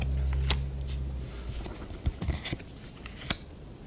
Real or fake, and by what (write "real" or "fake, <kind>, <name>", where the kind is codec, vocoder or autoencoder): real